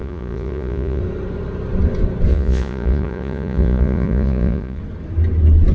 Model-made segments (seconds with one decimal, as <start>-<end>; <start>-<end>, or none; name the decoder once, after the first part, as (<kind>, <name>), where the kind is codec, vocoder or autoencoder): 0.0-1.0 (vocoder, Vocos); 2.3-4.8